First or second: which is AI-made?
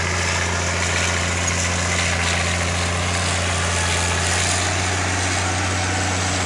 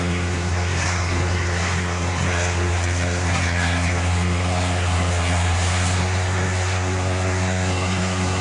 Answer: second